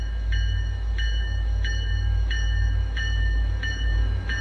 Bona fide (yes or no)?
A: no